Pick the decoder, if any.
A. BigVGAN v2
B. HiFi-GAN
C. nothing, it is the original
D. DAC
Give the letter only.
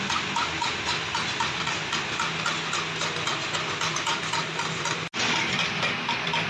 C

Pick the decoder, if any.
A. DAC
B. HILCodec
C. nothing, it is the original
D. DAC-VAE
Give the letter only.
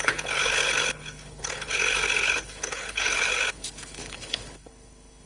B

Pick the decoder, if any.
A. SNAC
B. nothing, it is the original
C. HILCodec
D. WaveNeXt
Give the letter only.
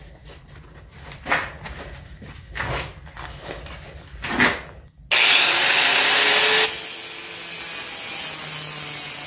B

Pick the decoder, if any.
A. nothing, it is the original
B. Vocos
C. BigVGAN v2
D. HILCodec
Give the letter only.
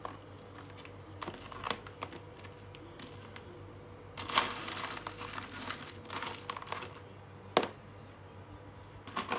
A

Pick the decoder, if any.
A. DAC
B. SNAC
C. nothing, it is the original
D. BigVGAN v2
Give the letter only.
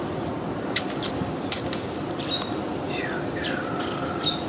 C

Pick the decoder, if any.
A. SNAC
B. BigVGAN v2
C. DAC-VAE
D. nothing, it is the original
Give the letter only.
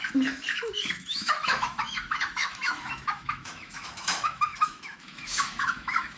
C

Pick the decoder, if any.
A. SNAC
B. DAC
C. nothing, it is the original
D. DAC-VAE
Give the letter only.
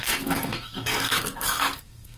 A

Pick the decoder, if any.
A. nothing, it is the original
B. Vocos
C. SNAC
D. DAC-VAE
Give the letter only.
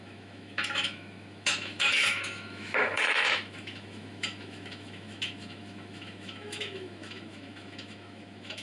D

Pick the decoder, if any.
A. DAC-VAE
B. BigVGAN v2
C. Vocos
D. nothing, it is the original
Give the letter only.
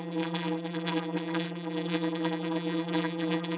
B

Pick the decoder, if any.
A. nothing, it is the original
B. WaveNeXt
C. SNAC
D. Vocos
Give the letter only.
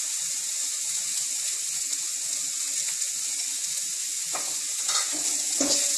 D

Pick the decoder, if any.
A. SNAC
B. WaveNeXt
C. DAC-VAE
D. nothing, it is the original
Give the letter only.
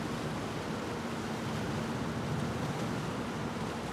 D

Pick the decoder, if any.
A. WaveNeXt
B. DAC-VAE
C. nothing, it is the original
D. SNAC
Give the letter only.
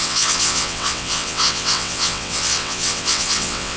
A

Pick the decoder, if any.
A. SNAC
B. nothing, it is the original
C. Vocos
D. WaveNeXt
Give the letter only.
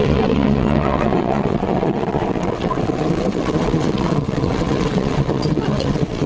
D